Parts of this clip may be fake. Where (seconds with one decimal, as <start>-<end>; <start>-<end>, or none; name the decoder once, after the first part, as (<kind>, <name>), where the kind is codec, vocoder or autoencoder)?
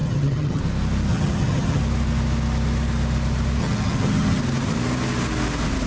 0.0-0.6 (vocoder, HiFi-GAN); 1.1-1.8; 3.6-4.4